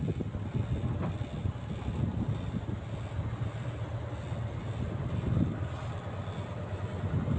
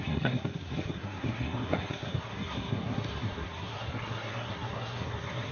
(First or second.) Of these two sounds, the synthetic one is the second